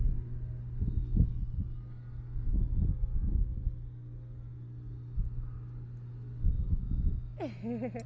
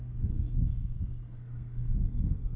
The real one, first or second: first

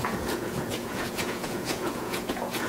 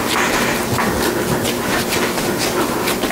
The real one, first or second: second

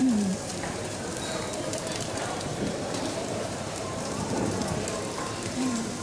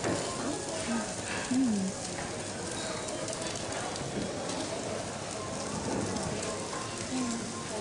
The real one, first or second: second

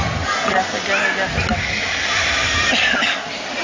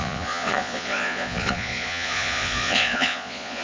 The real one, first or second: first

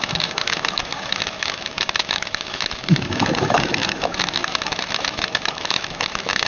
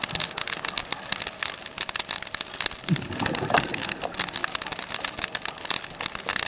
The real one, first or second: second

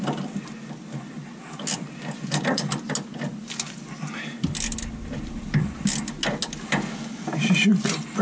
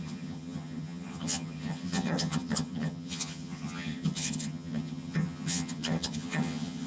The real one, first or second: first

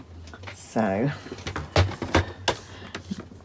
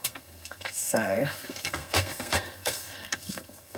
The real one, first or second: first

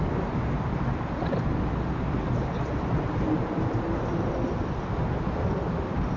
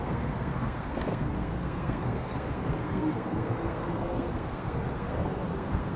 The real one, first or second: first